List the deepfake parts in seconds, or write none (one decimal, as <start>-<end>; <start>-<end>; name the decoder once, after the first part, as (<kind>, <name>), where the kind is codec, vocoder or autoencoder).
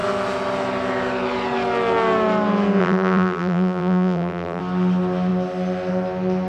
2.8-4.6 (vocoder, BigVGAN v2)